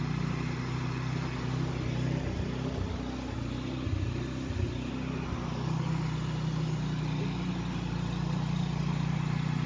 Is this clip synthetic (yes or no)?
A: no